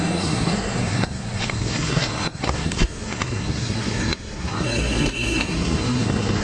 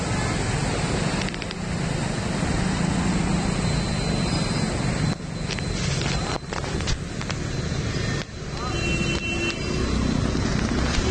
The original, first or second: second